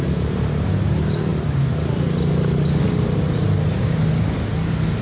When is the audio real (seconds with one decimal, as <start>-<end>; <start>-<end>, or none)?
0.0-5.0